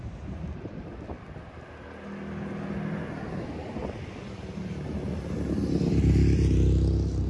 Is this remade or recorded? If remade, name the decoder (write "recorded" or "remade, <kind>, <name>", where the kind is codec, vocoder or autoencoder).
recorded